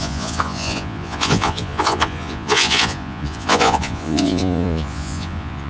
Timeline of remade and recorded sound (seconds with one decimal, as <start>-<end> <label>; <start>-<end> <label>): 0.0-5.7 remade